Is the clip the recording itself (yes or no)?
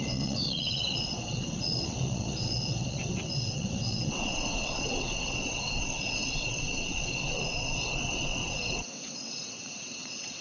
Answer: no